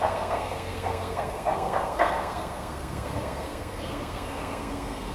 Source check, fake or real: fake